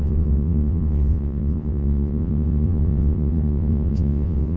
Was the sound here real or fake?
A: fake